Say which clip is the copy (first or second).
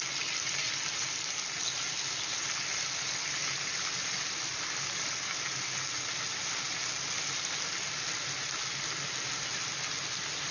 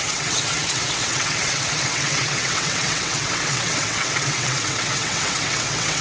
second